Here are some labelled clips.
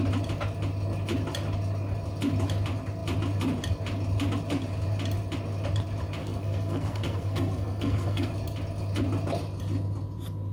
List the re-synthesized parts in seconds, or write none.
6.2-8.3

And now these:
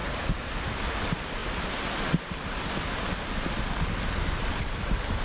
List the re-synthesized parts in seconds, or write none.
none

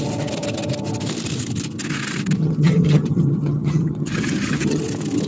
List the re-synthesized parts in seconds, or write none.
2.4-4.8

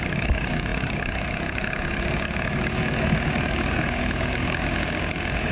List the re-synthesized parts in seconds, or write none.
0.0-5.5